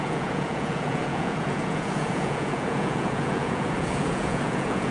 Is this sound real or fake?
fake